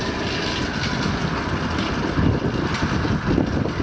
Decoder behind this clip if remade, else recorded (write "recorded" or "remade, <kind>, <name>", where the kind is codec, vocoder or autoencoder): recorded